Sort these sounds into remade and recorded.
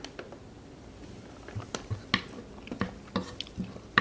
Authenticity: recorded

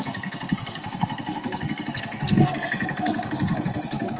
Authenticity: remade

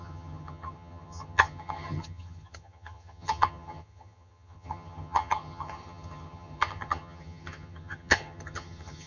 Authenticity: remade